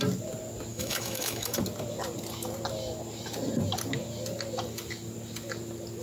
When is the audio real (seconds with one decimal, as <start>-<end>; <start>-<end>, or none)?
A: 0.0-0.7; 1.6-6.0